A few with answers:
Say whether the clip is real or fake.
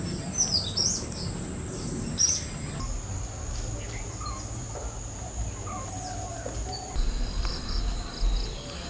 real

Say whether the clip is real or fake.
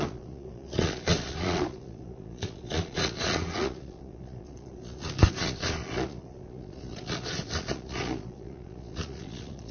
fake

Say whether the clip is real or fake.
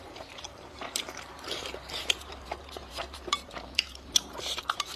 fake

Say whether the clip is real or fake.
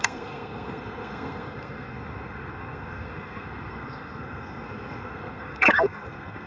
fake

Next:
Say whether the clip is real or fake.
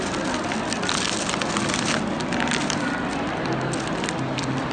real